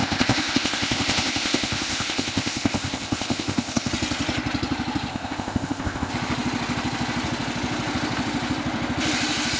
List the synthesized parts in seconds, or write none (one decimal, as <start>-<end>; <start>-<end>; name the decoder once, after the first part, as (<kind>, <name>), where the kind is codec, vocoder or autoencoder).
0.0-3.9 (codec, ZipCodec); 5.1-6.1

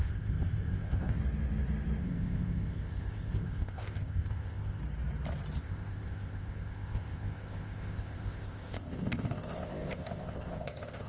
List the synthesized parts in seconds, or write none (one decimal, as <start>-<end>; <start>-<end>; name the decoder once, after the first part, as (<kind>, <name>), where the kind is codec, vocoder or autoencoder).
0.0-1.2 (codec, ZipCodec); 2.0-4.8; 5.6-11.1

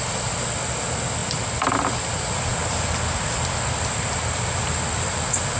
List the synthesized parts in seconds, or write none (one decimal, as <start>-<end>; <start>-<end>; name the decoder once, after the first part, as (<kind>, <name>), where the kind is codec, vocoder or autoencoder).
none